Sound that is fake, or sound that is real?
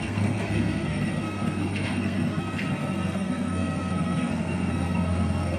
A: fake